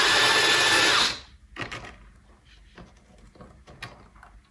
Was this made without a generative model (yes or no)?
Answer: yes